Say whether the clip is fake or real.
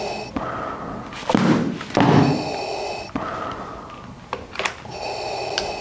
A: real